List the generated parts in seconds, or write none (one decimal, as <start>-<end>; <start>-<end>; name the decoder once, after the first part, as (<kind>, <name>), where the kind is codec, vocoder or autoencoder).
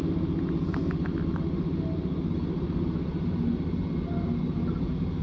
none